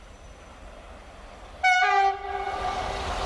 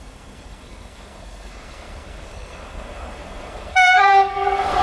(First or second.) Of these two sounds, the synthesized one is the second